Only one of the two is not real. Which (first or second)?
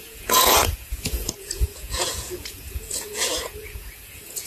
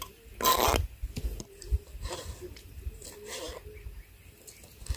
first